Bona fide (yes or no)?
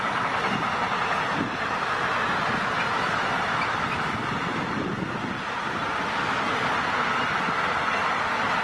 yes